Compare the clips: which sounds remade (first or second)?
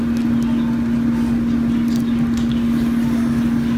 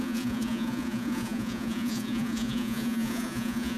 second